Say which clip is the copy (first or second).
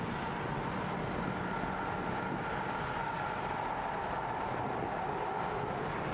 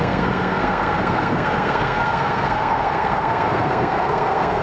second